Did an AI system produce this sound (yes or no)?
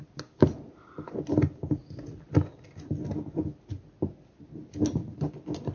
no